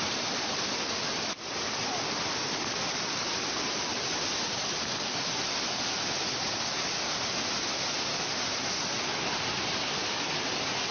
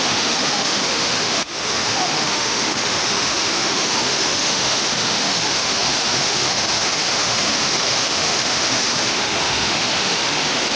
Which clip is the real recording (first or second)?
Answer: first